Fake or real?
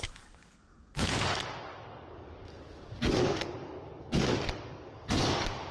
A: fake